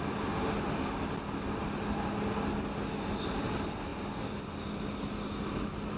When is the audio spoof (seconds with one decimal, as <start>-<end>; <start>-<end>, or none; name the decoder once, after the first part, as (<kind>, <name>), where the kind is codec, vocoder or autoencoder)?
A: none